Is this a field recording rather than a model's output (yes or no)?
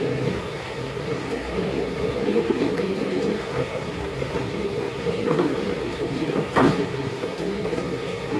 no